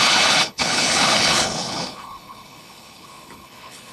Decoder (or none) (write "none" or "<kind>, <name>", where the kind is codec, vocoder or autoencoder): codec, HILCodec